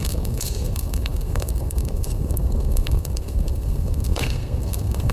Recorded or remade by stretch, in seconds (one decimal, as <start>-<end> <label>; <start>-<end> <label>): 0.0-5.1 remade